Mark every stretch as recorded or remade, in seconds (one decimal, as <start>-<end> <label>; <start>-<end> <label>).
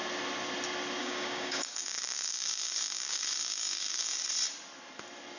0.0-1.0 recorded; 1.0-4.2 remade; 4.2-5.4 recorded